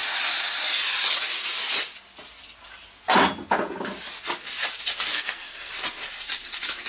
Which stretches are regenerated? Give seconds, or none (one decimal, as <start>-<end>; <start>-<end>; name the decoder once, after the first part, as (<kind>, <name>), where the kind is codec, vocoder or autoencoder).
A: 5.1-5.7 (codec, SNAC)